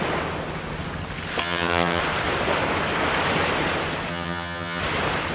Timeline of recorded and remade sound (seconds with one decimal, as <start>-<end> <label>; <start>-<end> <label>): 0.0-1.4 recorded; 1.4-2.0 remade; 2.0-4.1 recorded; 4.1-4.8 remade; 4.8-5.3 recorded